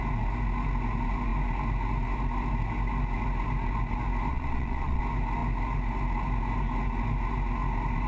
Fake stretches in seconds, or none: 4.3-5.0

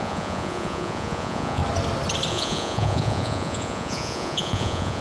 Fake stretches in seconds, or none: 0.0-1.6; 2.3-5.0

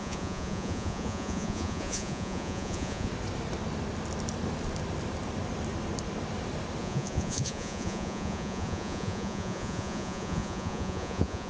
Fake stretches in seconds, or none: 0.0-3.1; 6.8-11.5

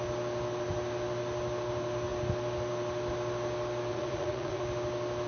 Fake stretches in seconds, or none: 3.9-4.6

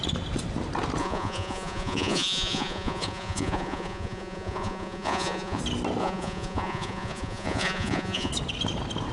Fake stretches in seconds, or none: 1.0-5.6; 6.0-8.3